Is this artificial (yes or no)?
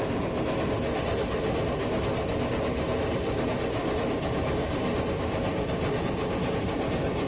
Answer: no